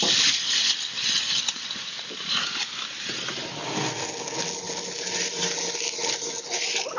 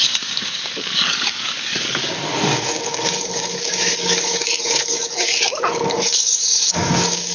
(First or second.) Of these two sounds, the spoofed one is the second